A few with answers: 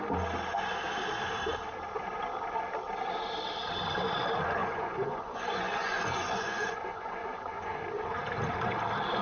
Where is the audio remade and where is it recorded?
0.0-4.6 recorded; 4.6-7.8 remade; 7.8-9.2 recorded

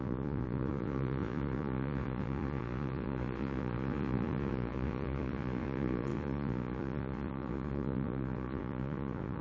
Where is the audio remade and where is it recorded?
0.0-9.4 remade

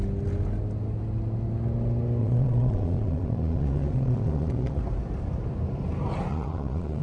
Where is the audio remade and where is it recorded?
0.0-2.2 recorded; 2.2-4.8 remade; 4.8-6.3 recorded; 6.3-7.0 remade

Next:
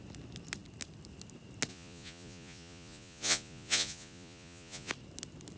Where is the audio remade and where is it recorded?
0.0-1.7 recorded; 1.7-4.9 remade; 4.9-5.6 recorded

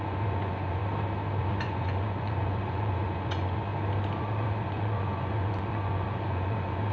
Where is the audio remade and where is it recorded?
0.0-0.8 remade; 0.8-1.4 recorded; 1.4-3.7 remade; 3.7-4.2 recorded; 4.2-6.9 remade

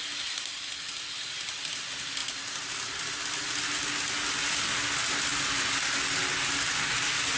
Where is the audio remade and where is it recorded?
0.0-7.4 recorded

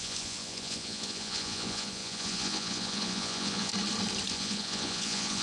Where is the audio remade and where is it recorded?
0.0-3.7 remade; 3.7-4.3 recorded; 4.3-5.4 remade